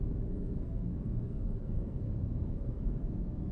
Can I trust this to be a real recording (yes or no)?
no